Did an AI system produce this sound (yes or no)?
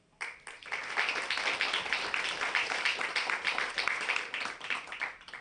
no